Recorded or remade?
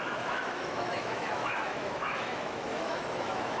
remade